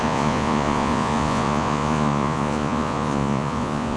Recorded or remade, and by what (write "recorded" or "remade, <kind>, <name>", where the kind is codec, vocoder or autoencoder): remade, vocoder, Vocos